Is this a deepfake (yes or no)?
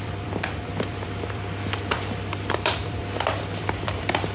yes